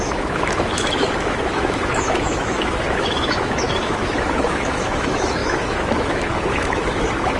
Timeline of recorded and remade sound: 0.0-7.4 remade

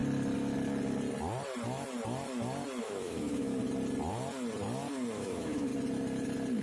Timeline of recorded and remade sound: 0.0-2.8 recorded; 2.8-3.6 remade; 3.6-5.1 recorded; 5.1-5.7 remade; 5.7-6.6 recorded

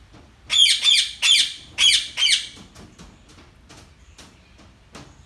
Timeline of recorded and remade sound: 0.0-5.3 recorded

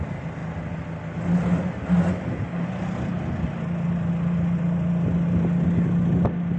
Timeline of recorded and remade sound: 0.0-6.6 recorded